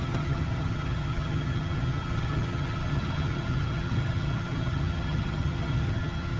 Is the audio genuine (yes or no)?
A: no